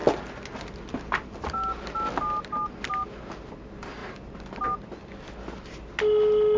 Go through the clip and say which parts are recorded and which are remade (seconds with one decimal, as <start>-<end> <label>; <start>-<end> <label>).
0.0-6.6 recorded